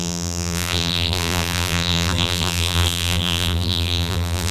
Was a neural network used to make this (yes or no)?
yes